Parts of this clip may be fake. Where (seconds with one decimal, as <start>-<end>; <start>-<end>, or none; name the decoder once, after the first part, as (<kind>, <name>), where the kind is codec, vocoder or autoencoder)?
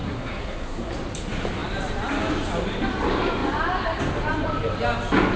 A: 0.0-0.9 (codec, SNAC)